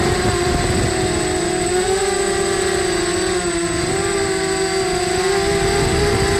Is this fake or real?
real